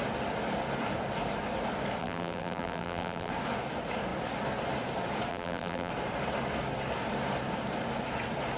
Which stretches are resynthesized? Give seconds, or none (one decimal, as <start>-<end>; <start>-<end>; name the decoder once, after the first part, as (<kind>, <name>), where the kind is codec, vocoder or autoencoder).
2.0-3.3 (vocoder, BigVGAN v2); 5.3-5.9